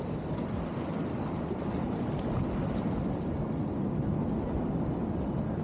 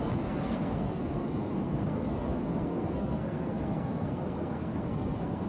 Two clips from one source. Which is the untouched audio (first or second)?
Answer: first